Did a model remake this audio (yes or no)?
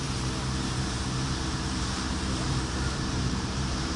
yes